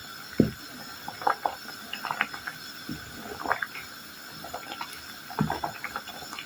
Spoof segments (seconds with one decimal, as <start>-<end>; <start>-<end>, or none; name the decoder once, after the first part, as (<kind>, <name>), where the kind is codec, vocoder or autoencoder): none